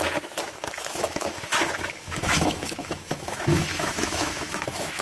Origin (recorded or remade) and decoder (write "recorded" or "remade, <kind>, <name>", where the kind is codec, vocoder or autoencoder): remade, autoencoder, DAC-VAE